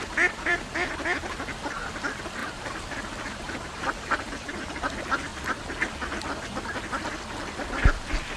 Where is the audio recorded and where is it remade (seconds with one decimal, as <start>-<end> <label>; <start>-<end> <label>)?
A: 0.0-1.2 remade; 1.2-1.9 recorded; 1.9-5.3 remade; 5.3-7.5 recorded; 7.5-8.4 remade

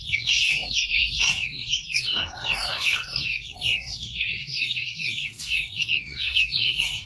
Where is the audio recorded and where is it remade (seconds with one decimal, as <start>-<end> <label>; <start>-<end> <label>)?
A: 0.0-7.1 remade

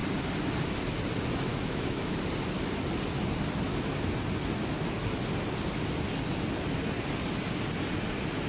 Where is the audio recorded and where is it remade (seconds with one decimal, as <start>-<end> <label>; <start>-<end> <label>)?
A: 0.0-1.5 recorded; 1.5-2.2 remade; 2.2-8.5 recorded